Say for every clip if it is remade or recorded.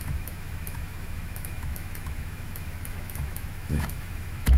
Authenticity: remade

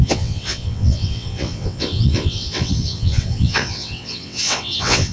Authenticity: remade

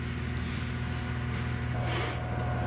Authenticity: recorded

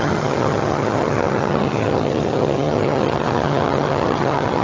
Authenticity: remade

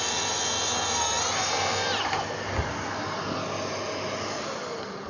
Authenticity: recorded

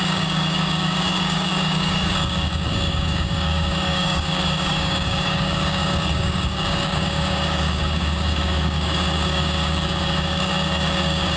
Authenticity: remade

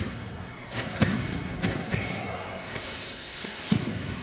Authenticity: remade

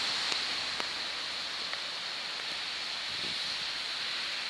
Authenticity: recorded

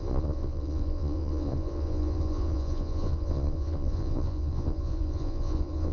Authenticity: remade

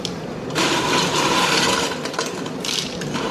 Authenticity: recorded